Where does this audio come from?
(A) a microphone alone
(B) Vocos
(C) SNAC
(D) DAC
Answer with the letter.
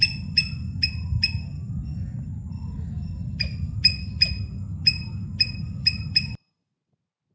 A